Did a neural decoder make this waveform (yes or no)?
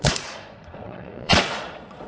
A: yes